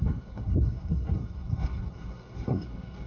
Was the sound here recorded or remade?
remade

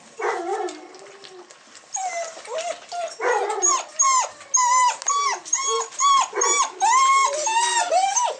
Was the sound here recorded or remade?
recorded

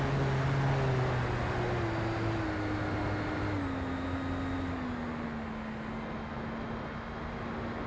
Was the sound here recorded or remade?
recorded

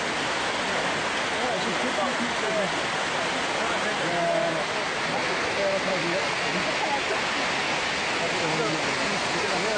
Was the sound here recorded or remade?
recorded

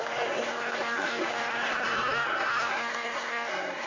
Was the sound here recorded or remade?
remade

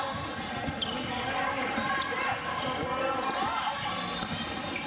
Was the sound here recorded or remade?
recorded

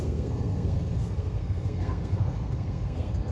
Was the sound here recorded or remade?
remade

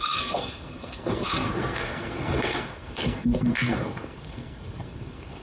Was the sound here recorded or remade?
remade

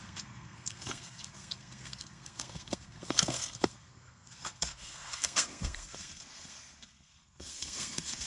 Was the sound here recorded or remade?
remade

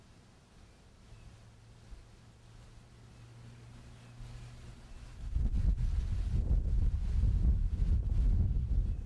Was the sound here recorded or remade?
recorded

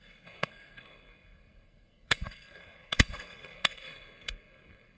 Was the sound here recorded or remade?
remade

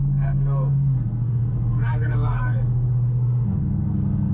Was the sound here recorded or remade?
remade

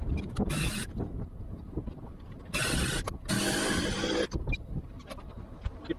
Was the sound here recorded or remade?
recorded